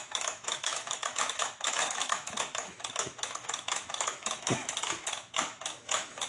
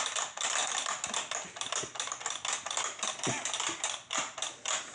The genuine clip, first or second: second